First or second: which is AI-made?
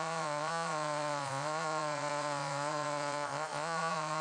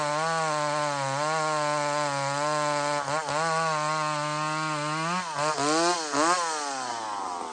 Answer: first